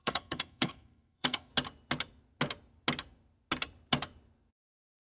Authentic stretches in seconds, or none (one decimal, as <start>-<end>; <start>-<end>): 1.5-4.5